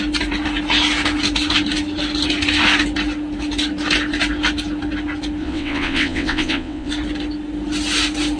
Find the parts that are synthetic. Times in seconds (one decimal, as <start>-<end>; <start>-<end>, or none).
5.4-6.9